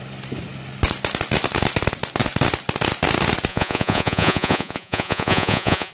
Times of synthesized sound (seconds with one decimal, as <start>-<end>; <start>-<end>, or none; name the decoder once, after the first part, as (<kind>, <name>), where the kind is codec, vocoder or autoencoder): 3.5-5.9 (vocoder, Vocos)

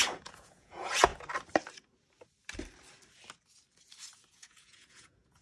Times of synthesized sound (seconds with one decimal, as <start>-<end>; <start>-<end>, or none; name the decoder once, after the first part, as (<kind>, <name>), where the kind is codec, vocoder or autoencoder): 0.0-1.1 (vocoder, Vocos); 4.3-5.4